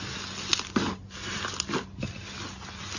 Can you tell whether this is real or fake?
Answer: real